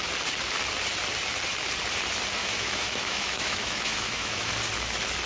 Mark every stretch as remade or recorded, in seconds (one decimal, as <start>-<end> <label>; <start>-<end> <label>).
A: 0.0-2.4 recorded; 2.4-4.5 remade; 4.5-5.3 recorded